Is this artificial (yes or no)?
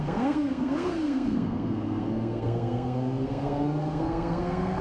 yes